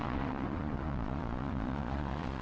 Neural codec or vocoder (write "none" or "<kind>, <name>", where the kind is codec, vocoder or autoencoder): vocoder, Vocos